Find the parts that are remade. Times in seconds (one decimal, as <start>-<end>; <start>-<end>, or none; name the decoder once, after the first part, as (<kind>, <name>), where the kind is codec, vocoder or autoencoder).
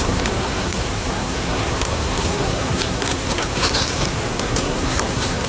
0.0-5.5 (codec, SNAC)